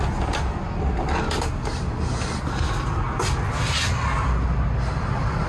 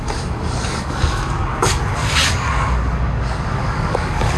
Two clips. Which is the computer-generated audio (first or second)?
second